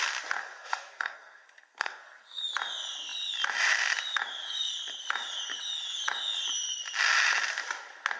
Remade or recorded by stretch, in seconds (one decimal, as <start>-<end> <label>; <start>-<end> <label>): 0.0-0.4 recorded; 0.4-2.4 remade; 2.4-8.2 recorded